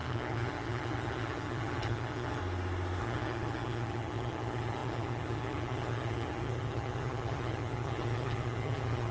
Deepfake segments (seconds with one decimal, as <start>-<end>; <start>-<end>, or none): 0.0-2.4; 3.0-9.1